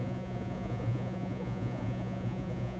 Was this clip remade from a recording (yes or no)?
yes